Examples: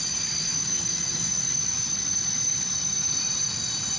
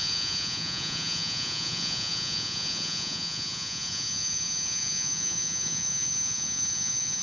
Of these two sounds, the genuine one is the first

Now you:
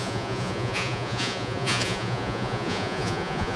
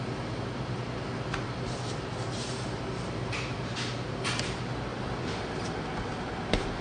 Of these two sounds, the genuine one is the second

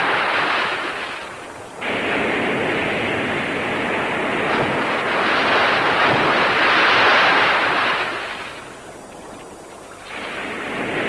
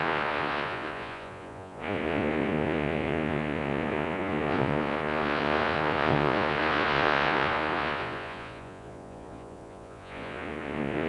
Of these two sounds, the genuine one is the first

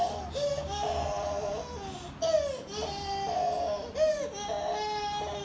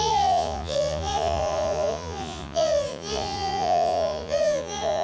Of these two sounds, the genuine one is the first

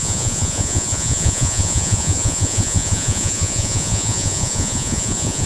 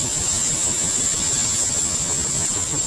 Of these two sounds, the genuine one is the second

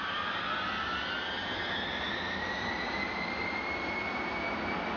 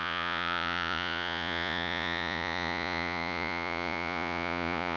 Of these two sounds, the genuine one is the first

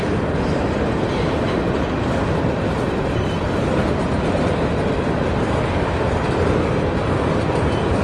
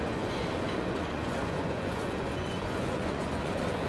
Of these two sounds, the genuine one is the first